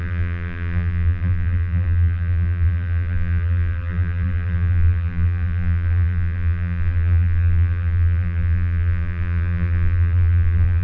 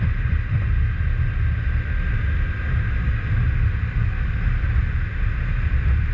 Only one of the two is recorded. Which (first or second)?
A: second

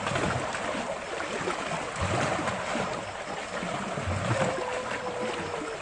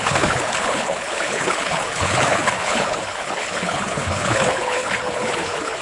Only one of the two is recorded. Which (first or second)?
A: first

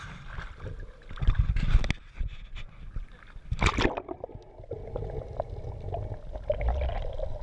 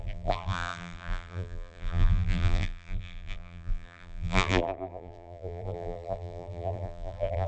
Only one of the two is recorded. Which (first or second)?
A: first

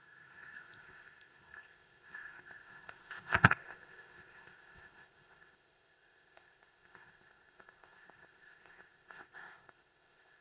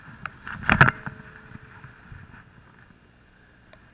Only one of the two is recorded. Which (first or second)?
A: second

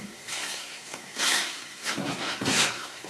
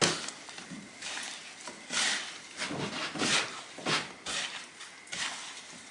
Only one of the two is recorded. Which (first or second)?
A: second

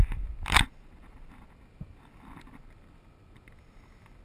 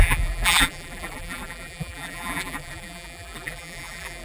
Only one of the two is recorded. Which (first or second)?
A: first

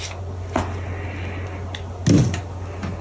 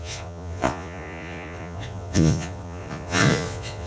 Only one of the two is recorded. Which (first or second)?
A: first